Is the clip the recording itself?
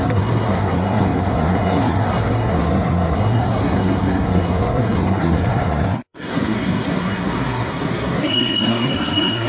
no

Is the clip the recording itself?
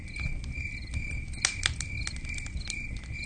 yes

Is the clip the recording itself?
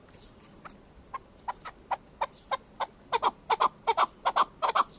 yes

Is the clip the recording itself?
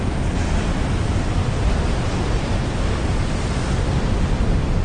yes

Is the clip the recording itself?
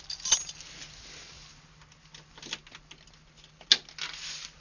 yes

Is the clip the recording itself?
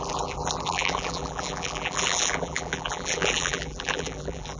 no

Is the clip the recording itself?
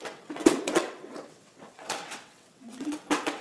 no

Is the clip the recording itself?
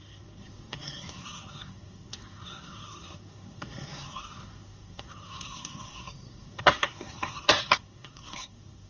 no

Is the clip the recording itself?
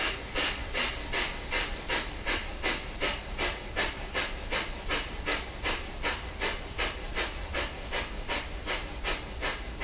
yes